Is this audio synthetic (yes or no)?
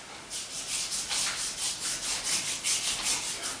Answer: no